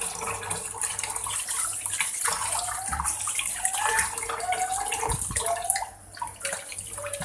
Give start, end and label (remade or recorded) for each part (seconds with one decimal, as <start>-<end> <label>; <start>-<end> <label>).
0.0-7.2 recorded